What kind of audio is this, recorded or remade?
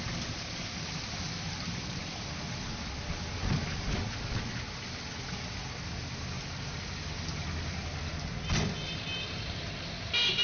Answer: recorded